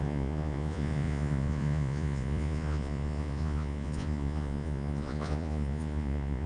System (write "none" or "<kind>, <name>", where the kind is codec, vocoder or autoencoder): vocoder, Vocos